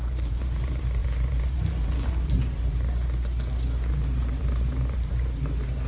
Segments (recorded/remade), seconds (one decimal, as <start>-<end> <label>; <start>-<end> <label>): 0.0-3.0 remade; 3.0-3.9 recorded; 3.9-5.9 remade

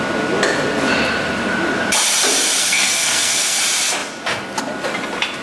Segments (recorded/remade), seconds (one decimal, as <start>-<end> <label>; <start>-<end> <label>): 0.0-2.6 recorded; 2.6-3.6 remade; 3.6-5.4 recorded

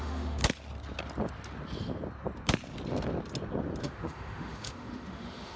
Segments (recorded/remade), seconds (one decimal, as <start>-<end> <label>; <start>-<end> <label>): 0.0-0.4 remade; 0.4-3.8 recorded; 3.8-5.6 remade

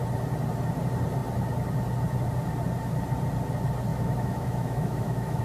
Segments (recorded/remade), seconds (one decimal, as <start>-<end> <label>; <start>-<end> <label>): 0.0-3.9 recorded; 3.9-5.4 remade

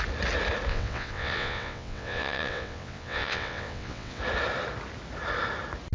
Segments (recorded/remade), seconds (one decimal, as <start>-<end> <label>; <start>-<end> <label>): 0.0-0.7 recorded; 0.7-4.2 remade; 4.2-5.9 recorded